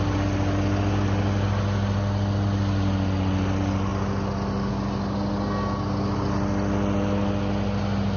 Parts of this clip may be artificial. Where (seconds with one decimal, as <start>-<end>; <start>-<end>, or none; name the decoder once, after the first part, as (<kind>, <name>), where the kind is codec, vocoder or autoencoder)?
none